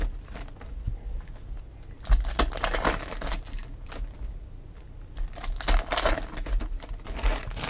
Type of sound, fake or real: real